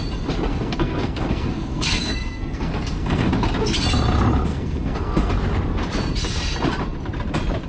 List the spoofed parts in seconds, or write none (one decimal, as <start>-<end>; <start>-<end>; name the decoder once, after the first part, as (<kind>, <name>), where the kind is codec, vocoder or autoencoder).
0.5-3.3 (codec, SNAC); 4.5-5.3